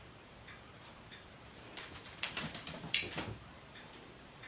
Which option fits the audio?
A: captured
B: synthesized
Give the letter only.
B